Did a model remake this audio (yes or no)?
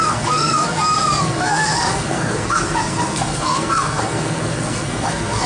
yes